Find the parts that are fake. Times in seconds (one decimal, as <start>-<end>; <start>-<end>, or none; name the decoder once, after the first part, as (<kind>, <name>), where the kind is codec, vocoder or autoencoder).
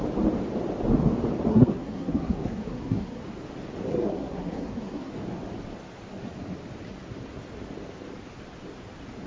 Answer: 1.5-3.2 (codec, SNAC); 3.9-5.1